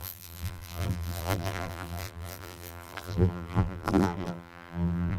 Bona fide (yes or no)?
no